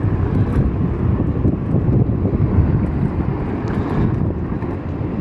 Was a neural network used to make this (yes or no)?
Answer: yes